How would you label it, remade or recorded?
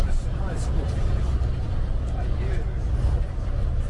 recorded